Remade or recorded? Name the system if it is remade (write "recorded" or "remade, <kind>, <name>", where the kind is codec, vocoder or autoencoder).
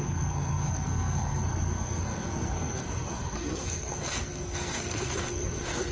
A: remade, codec, SNAC